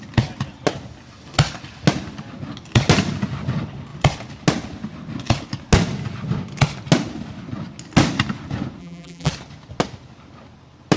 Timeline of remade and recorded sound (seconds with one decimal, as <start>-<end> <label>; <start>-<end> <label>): 0.0-8.8 recorded; 8.8-9.3 remade; 9.3-11.0 recorded